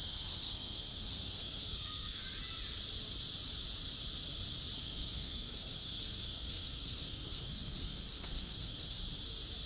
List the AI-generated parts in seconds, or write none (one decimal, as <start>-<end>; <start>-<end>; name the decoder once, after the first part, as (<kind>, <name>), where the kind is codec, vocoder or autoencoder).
0.0-2.2 (codec, SNAC); 4.8-9.0